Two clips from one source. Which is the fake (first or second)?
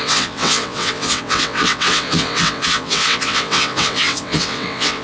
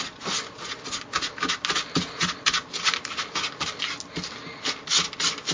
first